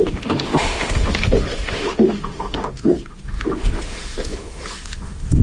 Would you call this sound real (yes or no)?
no